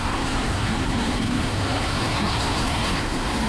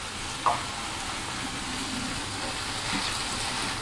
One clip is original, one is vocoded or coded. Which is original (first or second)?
second